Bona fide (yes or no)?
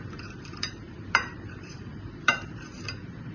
no